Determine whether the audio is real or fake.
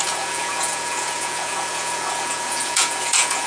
fake